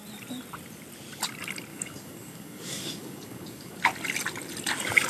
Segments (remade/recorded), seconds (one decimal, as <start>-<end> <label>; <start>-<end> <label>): 0.0-1.7 recorded; 1.7-3.8 remade; 3.8-5.1 recorded